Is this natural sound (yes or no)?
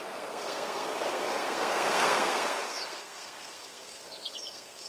no